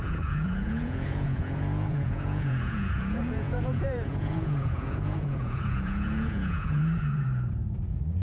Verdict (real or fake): fake